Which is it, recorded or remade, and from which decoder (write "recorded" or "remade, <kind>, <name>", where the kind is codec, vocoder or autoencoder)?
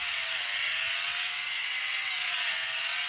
remade, vocoder, WaveNeXt